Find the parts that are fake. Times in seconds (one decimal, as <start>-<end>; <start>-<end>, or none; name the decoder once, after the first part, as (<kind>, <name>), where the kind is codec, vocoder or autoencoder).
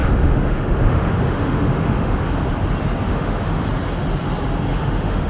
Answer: 0.0-2.4 (autoencoder, DAC-VAE); 3.1-3.7; 4.7-5.3